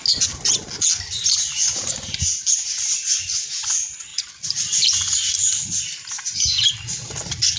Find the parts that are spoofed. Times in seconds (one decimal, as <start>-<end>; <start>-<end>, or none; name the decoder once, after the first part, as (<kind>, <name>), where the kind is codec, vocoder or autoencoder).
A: 4.1-6.1 (vocoder, BigVGAN v2)